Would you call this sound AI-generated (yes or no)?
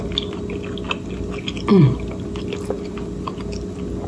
no